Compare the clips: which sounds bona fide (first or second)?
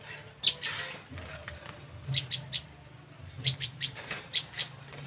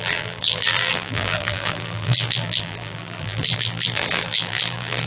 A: first